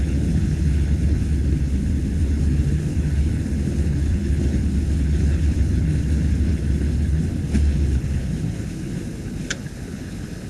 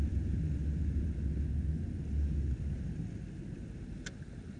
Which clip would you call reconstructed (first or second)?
first